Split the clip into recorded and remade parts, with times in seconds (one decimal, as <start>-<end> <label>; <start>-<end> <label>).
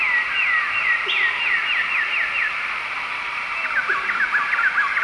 0.0-5.0 recorded